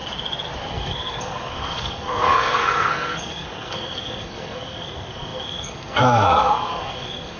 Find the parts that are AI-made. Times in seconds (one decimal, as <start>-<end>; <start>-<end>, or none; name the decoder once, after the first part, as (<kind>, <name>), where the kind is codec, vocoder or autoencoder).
0.7-7.4 (codec, SNAC)